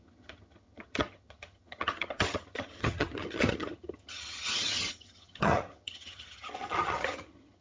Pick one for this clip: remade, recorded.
remade